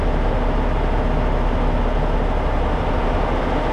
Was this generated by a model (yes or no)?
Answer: no